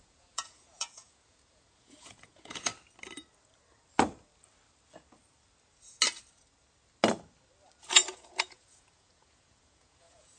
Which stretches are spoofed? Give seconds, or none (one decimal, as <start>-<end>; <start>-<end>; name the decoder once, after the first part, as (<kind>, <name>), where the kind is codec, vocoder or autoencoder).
0.0-2.7 (vocoder, Vocos); 7.8-10.4